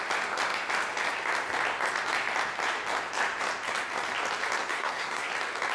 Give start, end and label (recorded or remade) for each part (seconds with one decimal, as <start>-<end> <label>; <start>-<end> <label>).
0.0-4.6 recorded; 4.6-5.3 remade; 5.3-5.7 recorded